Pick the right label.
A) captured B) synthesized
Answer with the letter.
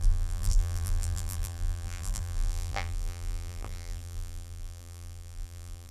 B